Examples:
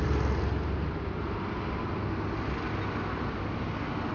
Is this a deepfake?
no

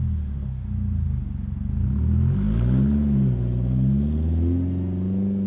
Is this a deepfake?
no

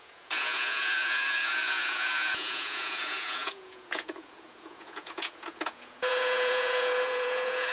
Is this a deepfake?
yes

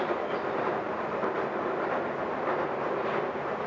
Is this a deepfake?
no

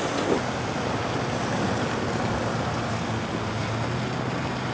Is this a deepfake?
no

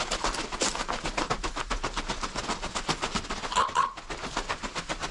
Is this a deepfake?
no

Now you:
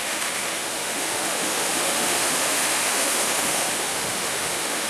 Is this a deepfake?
yes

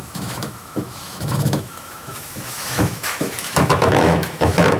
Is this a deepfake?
yes